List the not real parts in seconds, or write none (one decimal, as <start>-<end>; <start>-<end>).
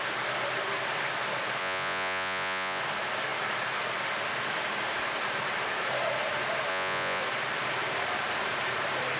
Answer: 1.6-2.8; 6.7-7.2